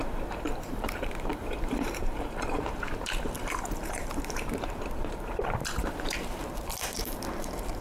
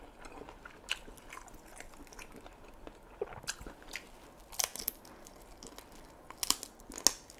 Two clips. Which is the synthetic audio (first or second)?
first